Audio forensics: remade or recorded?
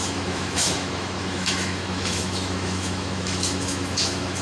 remade